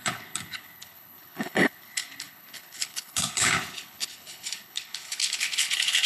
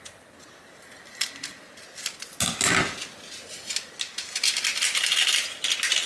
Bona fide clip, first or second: second